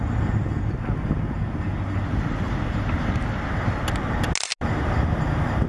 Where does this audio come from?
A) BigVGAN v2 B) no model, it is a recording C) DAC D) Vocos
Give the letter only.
B